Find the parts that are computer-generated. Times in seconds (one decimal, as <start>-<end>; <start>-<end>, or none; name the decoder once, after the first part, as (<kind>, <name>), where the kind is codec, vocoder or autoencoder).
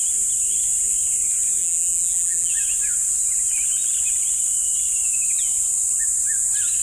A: 1.6-2.5 (vocoder, BigVGAN v2)